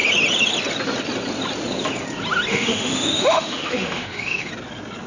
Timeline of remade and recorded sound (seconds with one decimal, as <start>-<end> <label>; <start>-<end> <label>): 0.0-2.5 recorded; 2.5-4.5 remade; 4.5-5.1 recorded